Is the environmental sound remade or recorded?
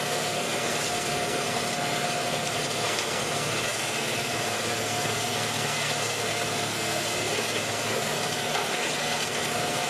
remade